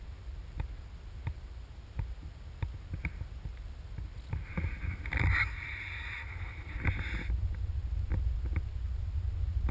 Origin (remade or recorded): recorded